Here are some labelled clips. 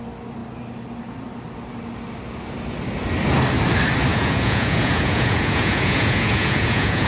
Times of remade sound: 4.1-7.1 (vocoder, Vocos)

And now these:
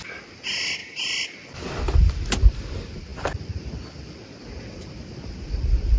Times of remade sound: none

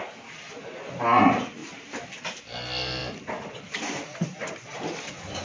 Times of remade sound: none

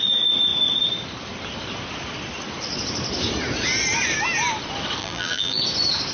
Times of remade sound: 5.0-5.6 (vocoder, BigVGAN v2)

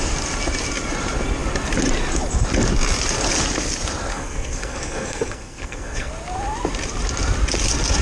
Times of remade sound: 4.1-6.1 (codec, SNAC)

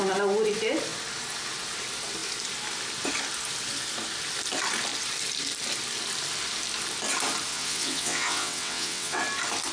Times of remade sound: 7.5-9.2 (vocoder, WaveNeXt)

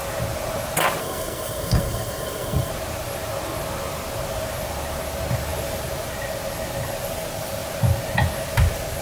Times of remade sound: 1.0-2.7 (codec, SNAC)

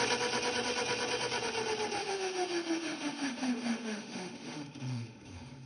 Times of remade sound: 2.0-5.7 (autoencoder, DAC-VAE)